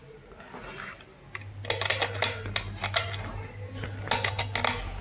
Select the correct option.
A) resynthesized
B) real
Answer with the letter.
B